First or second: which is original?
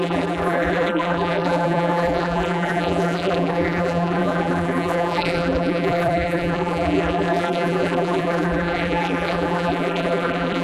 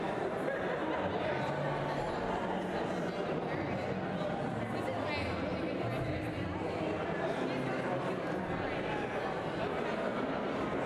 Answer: second